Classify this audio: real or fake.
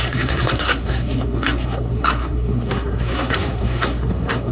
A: fake